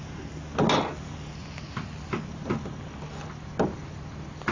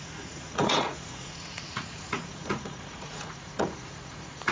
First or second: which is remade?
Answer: second